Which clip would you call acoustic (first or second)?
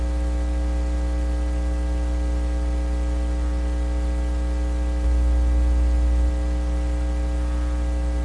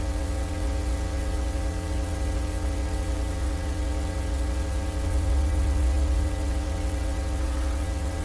first